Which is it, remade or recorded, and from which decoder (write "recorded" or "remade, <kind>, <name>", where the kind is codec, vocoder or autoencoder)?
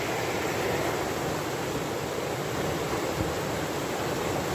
recorded